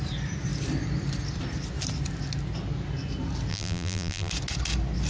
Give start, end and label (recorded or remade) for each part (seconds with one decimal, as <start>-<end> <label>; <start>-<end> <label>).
0.0-3.5 recorded; 3.5-4.3 remade; 4.3-5.1 recorded